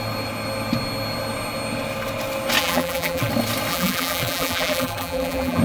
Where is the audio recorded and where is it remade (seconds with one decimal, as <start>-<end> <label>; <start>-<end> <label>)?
0.0-2.6 recorded; 2.6-3.3 remade; 3.3-3.7 recorded; 3.7-5.6 remade